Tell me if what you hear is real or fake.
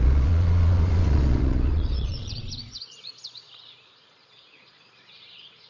fake